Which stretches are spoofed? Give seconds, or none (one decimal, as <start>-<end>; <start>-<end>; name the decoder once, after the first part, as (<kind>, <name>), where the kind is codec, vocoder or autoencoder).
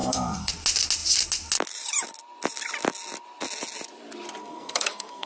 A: 0.0-0.5 (codec, SNAC); 4.4-5.3